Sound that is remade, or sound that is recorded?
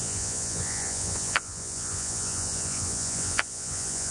remade